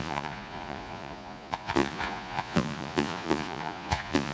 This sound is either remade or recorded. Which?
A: remade